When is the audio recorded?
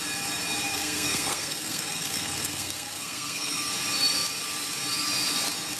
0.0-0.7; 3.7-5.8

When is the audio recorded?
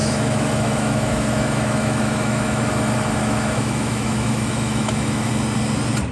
2.7-3.2; 5.3-6.1